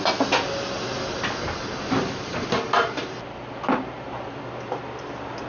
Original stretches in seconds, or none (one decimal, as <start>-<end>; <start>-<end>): 0.0-1.7; 4.7-5.5